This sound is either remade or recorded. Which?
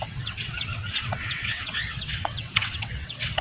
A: remade